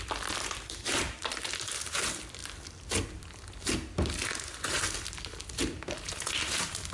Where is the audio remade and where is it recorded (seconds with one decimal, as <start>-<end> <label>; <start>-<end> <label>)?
0.0-6.9 recorded